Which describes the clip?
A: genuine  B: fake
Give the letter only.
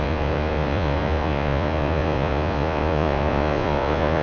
B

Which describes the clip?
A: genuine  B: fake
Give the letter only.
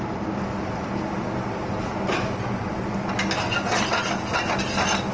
A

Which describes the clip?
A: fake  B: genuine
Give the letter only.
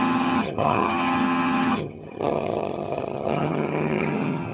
A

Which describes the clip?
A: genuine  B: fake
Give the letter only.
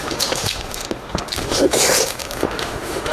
B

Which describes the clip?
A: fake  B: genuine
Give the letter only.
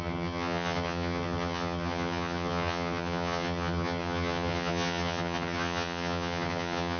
A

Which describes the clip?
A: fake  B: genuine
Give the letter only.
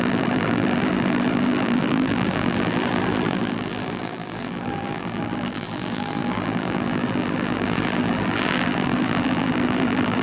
A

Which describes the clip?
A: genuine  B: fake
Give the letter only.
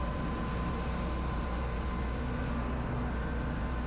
A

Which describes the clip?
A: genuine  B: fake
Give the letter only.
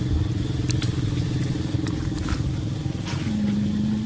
B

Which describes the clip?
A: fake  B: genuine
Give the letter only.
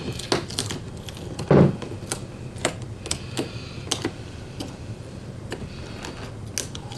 B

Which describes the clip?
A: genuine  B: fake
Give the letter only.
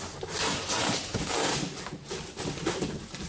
A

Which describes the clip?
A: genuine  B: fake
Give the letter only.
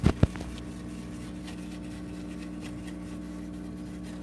A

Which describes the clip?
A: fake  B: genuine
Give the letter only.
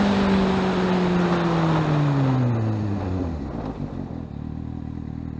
B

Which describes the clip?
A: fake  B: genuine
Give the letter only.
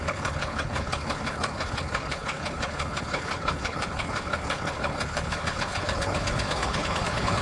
A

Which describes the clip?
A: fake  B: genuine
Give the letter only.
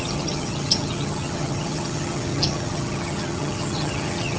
A